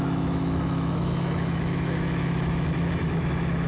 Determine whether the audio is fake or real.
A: fake